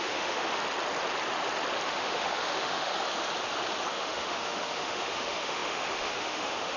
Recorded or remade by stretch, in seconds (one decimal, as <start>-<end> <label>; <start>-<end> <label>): 0.0-0.6 remade; 0.6-1.9 recorded; 1.9-2.9 remade; 2.9-3.9 recorded; 3.9-6.8 remade